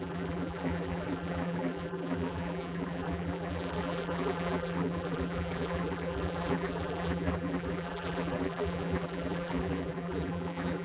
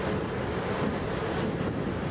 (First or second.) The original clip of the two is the second